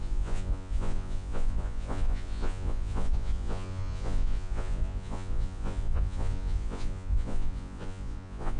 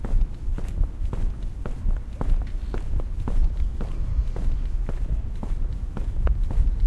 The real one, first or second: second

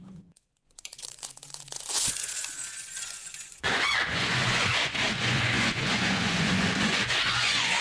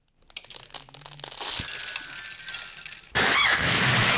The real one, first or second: second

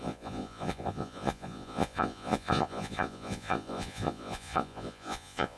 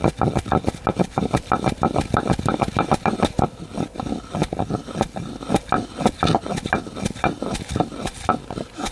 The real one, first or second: second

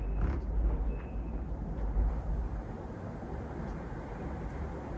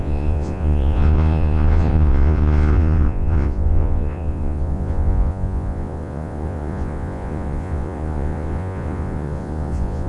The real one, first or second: first